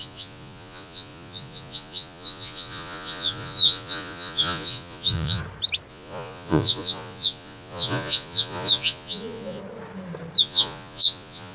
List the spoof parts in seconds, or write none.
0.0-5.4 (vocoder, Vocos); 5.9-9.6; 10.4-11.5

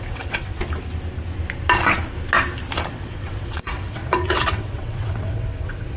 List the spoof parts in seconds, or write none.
0.0-0.6 (vocoder, WaveNeXt); 2.9-6.0